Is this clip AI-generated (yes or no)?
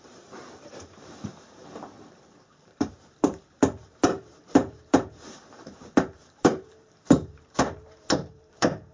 yes